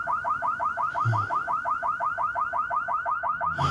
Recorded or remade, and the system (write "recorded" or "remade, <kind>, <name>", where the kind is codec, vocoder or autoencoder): remade, vocoder, BigVGAN v2